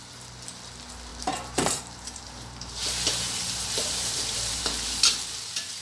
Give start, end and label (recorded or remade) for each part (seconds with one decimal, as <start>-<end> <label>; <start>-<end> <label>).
0.0-1.1 recorded; 1.1-4.6 remade; 4.6-5.8 recorded